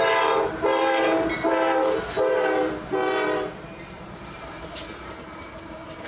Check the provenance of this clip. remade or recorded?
remade